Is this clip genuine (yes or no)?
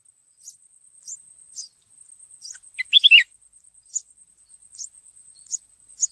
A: yes